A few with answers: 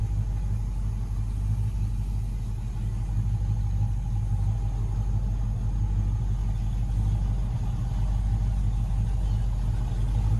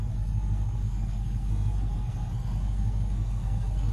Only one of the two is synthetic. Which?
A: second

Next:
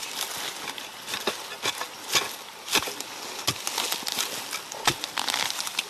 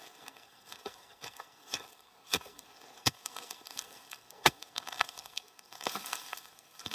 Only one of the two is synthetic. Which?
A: second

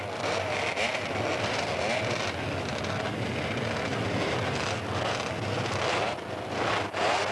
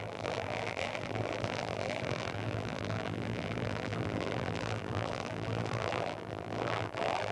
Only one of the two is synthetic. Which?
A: second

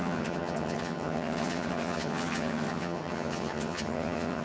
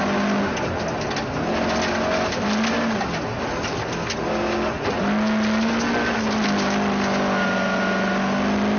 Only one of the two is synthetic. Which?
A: first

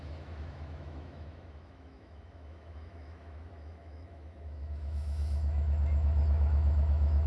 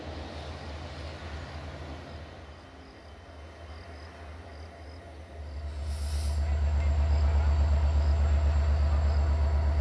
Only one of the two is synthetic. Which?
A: first